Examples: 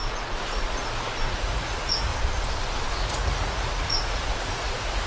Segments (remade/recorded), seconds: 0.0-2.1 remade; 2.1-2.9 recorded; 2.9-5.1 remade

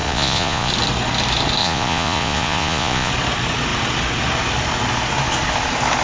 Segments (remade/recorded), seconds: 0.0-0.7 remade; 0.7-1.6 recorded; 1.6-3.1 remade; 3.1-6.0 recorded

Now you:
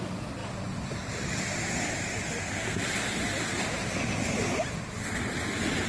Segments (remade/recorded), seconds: 0.0-5.9 recorded